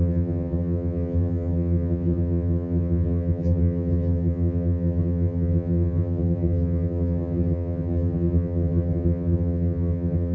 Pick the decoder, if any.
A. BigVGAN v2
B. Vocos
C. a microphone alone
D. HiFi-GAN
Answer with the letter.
D